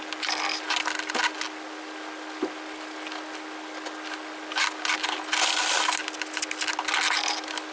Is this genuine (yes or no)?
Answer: yes